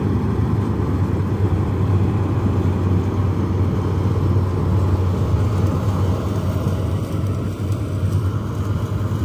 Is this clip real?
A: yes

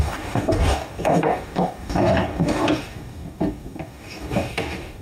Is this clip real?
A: no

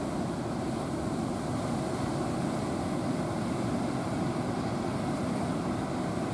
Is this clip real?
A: yes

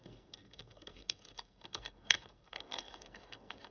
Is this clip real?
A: no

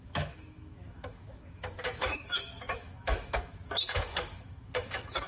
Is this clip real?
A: no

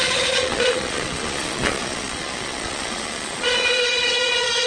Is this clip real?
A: no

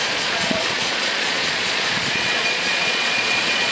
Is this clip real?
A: no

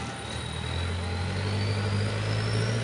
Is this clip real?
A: yes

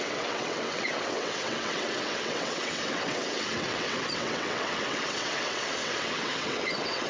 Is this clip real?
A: no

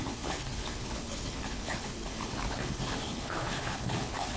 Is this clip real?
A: no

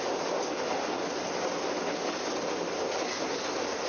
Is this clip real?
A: yes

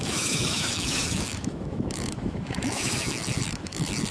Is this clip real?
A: no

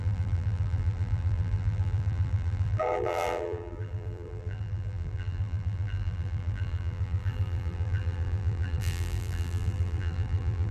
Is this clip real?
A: no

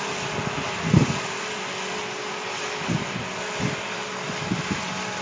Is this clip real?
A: yes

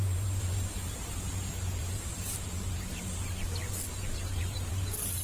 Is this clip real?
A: no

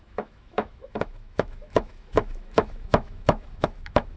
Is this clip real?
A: no